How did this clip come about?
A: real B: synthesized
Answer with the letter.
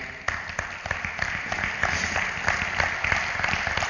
A